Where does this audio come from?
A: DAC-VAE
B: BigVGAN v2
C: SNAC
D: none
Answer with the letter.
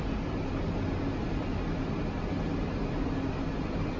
D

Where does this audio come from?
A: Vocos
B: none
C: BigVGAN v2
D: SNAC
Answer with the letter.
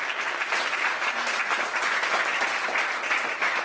B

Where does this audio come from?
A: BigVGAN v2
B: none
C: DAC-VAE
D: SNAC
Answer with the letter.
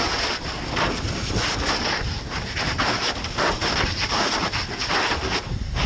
B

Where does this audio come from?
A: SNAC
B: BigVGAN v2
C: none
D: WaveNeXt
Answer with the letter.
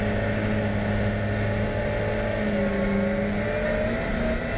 C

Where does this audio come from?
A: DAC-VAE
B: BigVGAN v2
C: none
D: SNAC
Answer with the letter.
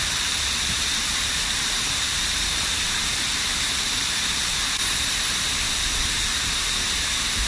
B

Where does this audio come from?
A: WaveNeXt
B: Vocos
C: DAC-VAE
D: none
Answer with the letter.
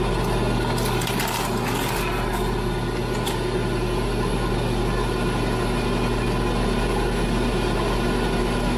D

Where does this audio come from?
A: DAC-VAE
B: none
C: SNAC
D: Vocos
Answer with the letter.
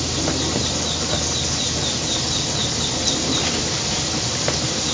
B